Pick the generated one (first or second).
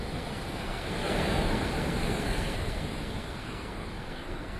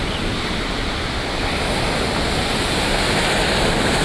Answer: first